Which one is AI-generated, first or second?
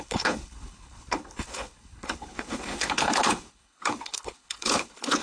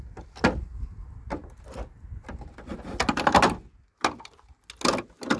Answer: first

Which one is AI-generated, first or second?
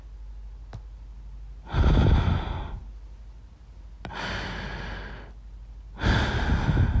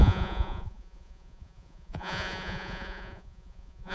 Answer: second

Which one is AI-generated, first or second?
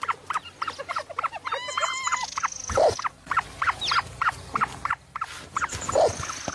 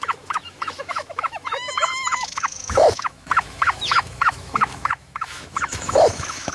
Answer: second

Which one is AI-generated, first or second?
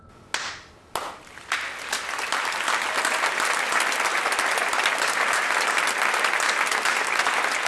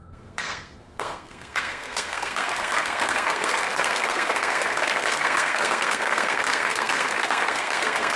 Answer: second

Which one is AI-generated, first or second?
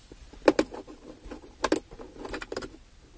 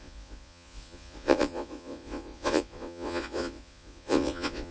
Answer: second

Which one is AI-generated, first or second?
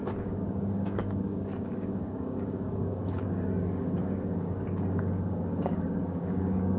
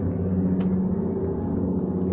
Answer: first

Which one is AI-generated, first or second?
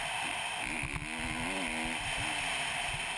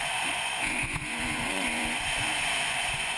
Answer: second